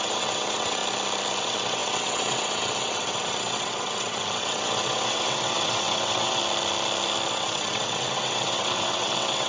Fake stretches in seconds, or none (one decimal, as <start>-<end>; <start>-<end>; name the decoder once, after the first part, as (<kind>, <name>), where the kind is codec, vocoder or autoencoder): 0.0-0.8 (vocoder, WaveNeXt); 1.4-6.4; 7.3-9.5